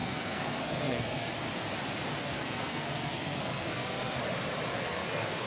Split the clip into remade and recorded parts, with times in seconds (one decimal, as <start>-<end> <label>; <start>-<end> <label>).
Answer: 0.0-1.3 remade; 1.3-2.2 recorded; 2.2-4.2 remade; 4.2-4.7 recorded; 4.7-5.5 remade